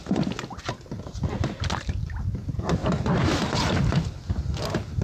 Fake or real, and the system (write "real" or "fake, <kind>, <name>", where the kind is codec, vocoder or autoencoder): real